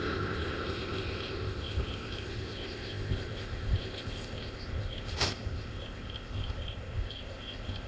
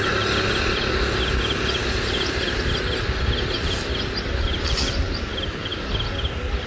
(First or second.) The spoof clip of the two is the first